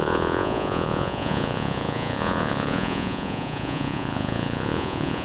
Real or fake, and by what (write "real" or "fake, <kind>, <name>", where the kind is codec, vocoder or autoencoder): fake, vocoder, Vocos